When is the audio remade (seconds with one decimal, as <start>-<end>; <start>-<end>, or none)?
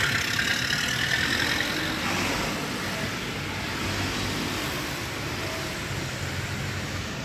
none